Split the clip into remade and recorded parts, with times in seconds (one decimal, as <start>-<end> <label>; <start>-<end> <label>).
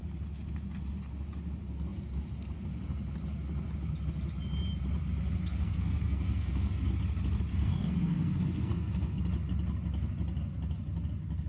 0.0-5.5 recorded; 5.5-6.9 remade; 6.9-7.5 recorded; 7.5-9.2 remade; 9.2-11.5 recorded